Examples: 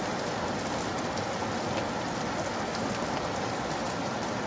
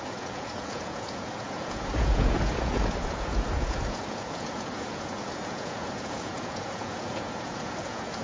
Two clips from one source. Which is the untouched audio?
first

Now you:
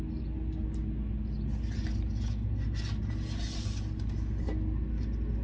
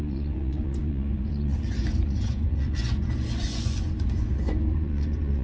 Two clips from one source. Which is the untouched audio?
first